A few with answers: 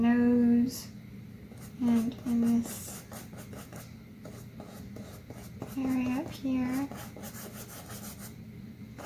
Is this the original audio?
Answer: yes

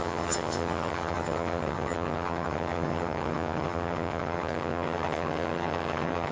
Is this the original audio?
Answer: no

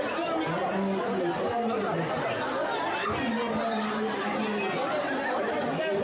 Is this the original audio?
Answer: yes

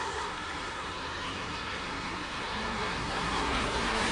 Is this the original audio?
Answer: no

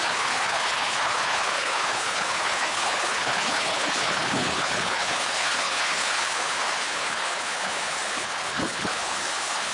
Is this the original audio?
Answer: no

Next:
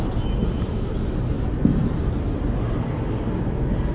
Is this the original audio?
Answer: yes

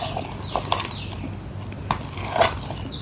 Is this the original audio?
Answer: yes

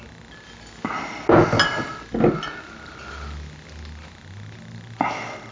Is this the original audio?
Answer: yes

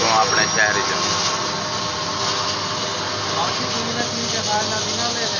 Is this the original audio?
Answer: yes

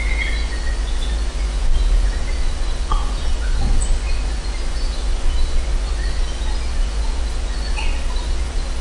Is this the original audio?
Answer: no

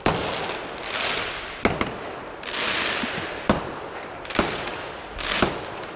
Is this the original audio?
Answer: yes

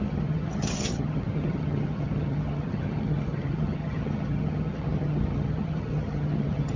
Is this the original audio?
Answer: no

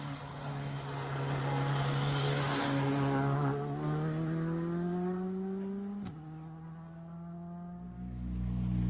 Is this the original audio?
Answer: yes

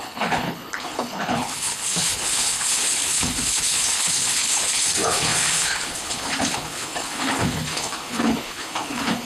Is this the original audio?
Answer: no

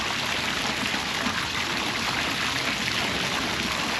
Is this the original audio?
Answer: yes